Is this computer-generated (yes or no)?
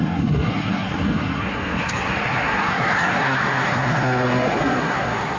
yes